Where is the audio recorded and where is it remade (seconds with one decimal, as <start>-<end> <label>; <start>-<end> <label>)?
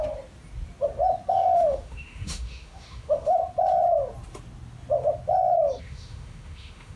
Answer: 0.0-1.3 recorded; 1.3-3.4 remade; 3.4-5.8 recorded; 5.8-7.0 remade